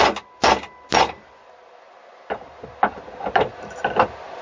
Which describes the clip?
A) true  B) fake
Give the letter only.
A